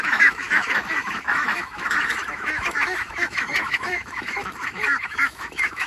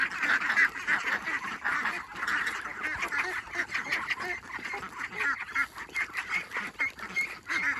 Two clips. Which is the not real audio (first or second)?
first